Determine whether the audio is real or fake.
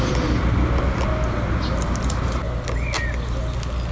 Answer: real